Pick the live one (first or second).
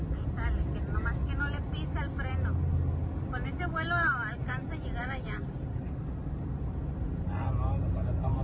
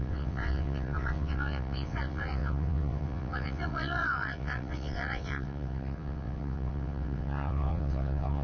first